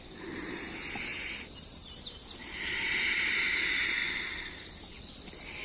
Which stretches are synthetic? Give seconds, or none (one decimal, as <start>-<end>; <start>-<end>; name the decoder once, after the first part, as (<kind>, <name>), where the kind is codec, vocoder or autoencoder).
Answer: none